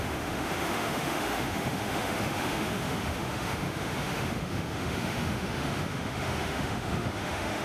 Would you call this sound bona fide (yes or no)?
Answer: no